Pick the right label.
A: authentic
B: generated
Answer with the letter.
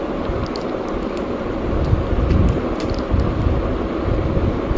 A